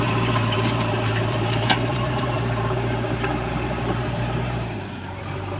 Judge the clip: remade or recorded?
remade